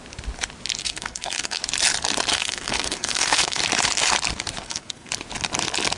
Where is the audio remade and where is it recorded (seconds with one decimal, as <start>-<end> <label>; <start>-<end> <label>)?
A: 0.0-0.8 recorded; 0.8-1.6 remade; 1.6-2.3 recorded; 2.3-3.6 remade; 3.6-4.6 recorded; 4.6-5.1 remade; 5.1-6.0 recorded